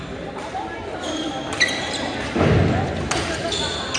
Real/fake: real